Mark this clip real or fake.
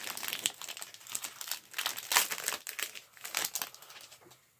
real